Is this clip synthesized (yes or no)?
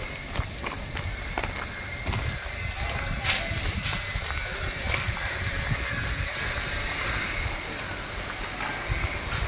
no